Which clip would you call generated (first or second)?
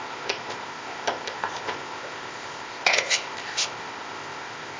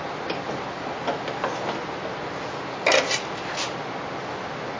first